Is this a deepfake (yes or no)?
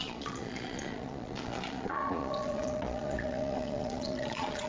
yes